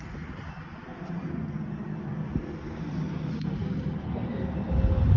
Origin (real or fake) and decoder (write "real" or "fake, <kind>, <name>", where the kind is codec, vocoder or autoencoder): real